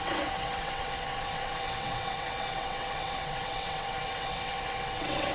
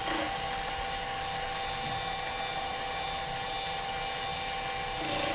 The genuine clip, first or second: second